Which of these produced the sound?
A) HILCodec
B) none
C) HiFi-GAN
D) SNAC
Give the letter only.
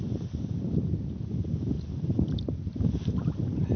B